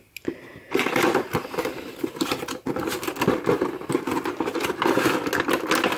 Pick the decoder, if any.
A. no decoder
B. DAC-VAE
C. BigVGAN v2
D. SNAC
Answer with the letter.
A